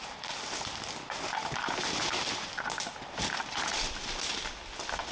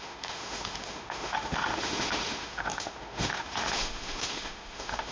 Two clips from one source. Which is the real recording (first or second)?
first